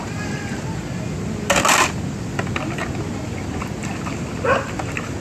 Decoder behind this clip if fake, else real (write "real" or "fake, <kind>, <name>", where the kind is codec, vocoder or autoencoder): real